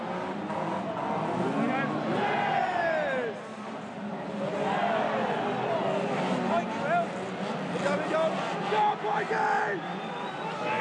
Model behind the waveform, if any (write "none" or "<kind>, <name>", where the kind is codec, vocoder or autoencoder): none